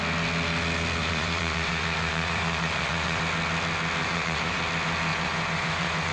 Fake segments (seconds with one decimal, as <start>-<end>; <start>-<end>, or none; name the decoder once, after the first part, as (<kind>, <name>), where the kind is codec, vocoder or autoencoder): 1.0-3.2 (vocoder, Vocos); 4.0-4.6; 5.1-6.1